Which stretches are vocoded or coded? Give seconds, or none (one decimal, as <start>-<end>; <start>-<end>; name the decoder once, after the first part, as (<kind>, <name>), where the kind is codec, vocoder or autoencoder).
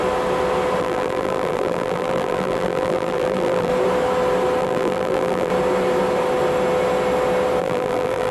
0.8-3.7 (vocoder, BigVGAN v2); 4.6-5.5; 7.6-8.3